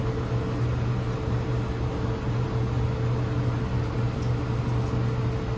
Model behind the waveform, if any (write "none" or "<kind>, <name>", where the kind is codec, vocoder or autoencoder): none